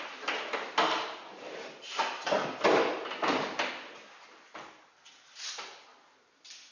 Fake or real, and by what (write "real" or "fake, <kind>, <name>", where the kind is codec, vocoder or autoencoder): real